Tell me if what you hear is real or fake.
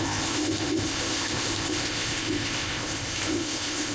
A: fake